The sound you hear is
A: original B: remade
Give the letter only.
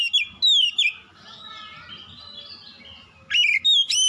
A